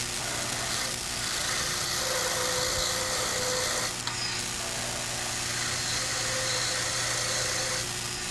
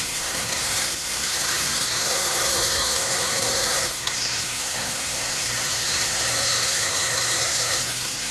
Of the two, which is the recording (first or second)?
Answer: first